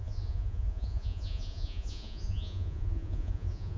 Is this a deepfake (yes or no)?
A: yes